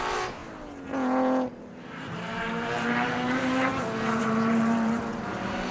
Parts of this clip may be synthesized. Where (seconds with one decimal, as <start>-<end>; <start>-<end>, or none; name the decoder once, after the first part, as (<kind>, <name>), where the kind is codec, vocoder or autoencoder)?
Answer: 0.0-0.4 (vocoder, BigVGAN v2); 1.5-3.7; 4.2-5.7